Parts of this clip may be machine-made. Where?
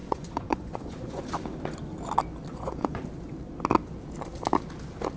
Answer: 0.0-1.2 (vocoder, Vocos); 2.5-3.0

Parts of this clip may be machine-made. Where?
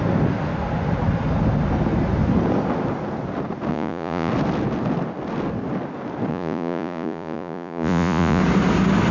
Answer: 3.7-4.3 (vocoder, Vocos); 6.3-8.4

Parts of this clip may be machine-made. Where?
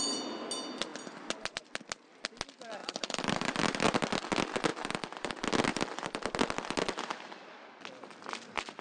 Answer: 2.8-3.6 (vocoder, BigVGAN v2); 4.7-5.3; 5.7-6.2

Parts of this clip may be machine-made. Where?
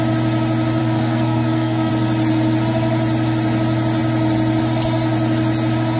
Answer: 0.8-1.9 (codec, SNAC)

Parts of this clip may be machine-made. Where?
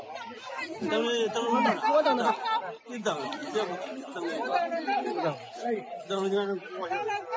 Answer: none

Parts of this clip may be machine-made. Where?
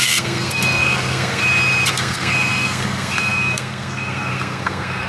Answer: 0.0-1.4 (codec, SNAC); 1.9-5.1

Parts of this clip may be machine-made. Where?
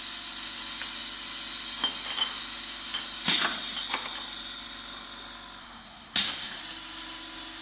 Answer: 5.6-6.6 (codec, SNAC)